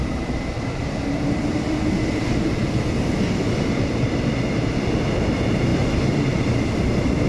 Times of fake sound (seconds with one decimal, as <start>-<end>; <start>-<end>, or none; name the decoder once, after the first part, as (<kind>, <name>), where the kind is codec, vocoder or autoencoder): none